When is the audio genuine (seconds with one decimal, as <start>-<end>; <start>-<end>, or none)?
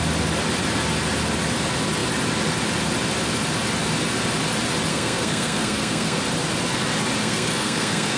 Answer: 0.0-4.9; 6.2-7.2